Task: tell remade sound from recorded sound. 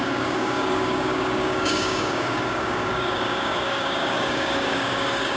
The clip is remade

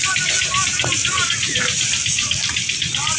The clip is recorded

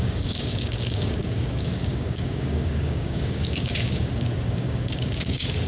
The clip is remade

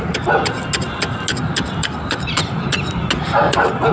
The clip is recorded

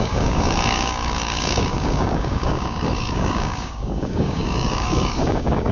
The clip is remade